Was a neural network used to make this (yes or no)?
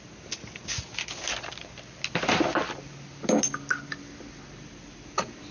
no